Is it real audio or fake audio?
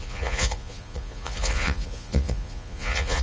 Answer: fake